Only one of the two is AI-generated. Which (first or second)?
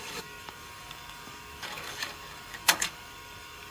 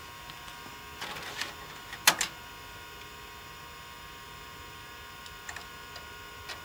first